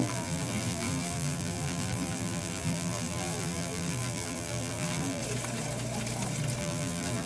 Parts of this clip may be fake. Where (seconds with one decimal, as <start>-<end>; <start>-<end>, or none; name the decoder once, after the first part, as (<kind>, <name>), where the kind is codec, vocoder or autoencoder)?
0.0-5.2 (vocoder, BigVGAN v2); 6.6-7.3